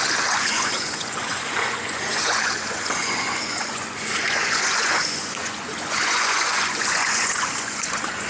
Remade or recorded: remade